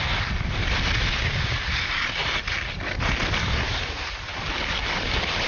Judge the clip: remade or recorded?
recorded